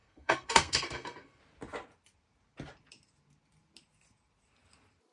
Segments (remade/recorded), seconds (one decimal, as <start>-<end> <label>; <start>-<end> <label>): 0.0-1.4 remade; 1.4-5.1 recorded